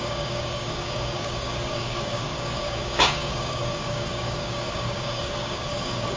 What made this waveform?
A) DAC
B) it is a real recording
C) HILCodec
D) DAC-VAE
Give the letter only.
A